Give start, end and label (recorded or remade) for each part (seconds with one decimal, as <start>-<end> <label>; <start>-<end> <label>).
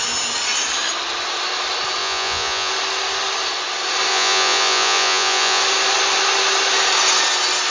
0.0-2.0 recorded; 2.0-2.7 remade; 2.7-4.1 recorded; 4.1-5.6 remade; 5.6-7.7 recorded